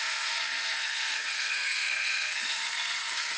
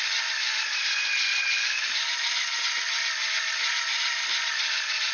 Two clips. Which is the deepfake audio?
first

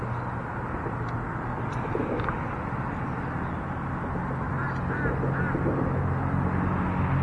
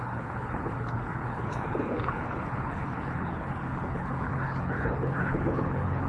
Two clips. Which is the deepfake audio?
second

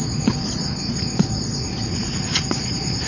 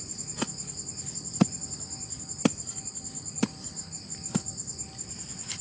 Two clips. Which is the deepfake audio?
first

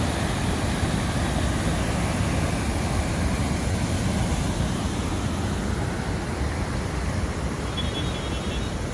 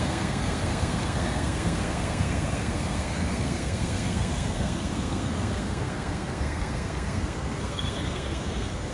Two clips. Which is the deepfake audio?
second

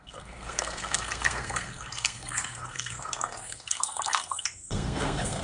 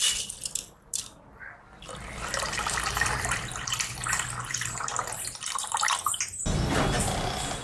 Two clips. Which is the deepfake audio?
first